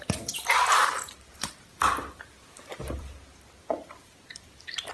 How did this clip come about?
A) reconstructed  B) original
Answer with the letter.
A